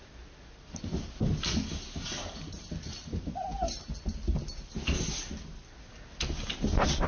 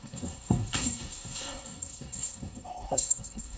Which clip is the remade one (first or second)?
second